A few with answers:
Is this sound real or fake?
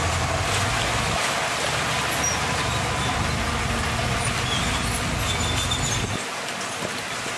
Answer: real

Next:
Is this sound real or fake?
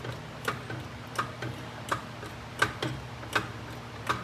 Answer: real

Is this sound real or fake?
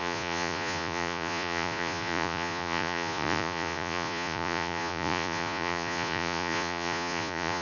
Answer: fake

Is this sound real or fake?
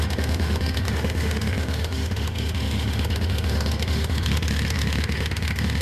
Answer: fake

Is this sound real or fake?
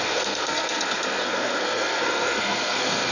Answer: fake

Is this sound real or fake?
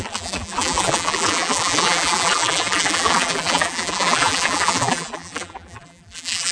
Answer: fake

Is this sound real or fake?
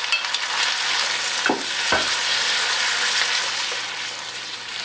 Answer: real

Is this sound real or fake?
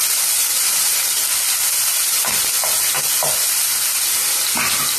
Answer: real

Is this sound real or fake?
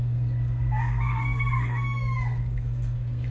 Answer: fake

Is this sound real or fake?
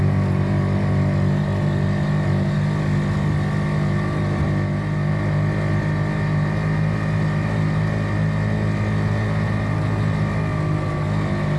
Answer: real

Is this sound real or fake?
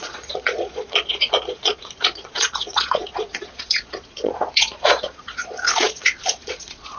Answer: fake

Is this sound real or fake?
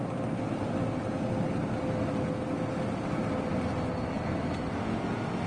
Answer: real